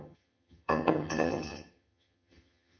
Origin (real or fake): fake